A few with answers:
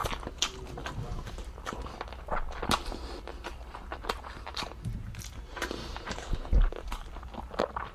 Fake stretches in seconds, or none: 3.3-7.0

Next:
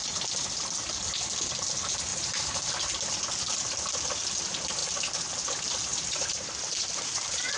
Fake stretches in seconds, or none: 2.1-2.7; 4.8-5.3; 5.9-7.6

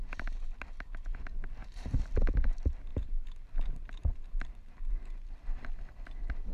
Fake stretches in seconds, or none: 1.6-2.3; 2.9-5.8